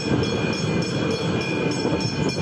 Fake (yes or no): no